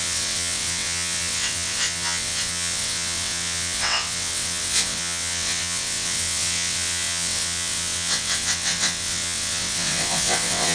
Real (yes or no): no